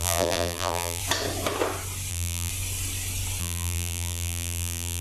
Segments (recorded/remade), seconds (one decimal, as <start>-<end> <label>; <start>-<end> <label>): 0.0-1.0 remade; 1.0-2.1 recorded; 2.1-2.5 remade; 2.5-3.4 recorded; 3.4-5.0 remade